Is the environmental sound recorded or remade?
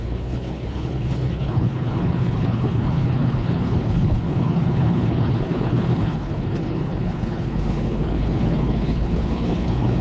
remade